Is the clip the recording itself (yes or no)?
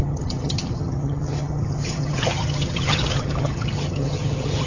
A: no